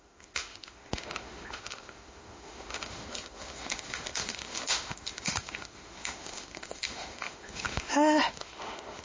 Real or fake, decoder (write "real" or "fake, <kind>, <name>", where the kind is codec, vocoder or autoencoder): fake, autoencoder, DAC-VAE